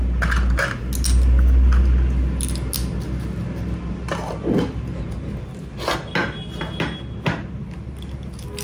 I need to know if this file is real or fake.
real